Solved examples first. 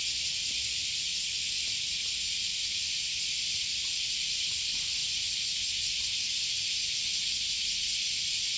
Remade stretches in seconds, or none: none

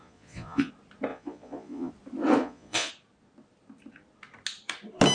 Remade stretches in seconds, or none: 0.0-0.7; 1.1-1.9; 2.4-2.9